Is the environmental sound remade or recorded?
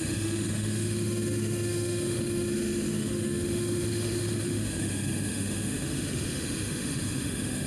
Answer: remade